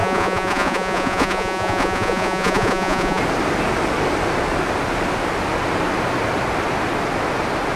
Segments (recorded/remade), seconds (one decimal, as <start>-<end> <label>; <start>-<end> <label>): 0.0-3.2 remade; 3.2-7.8 recorded